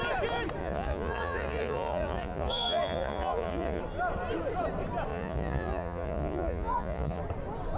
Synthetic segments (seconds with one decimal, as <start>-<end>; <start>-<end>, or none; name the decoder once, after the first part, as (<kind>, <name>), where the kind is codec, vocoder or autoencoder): 0.6-3.8 (vocoder, Vocos); 5.1-7.2